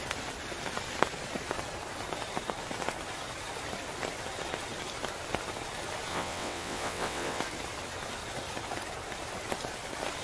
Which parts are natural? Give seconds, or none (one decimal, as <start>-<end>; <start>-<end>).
0.0-6.1; 7.4-10.2